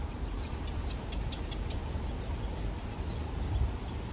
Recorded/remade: recorded